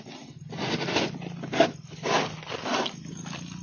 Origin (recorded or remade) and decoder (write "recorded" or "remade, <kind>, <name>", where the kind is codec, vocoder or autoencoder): recorded